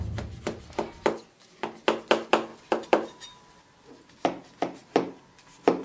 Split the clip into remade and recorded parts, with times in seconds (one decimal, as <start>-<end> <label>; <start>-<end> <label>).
0.0-2.5 recorded; 2.5-3.6 remade; 3.6-5.8 recorded